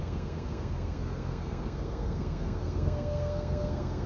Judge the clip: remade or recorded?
remade